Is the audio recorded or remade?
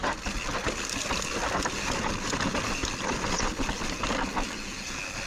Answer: recorded